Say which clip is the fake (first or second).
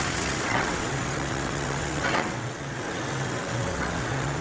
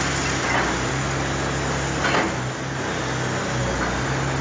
first